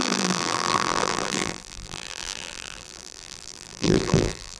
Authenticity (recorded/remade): remade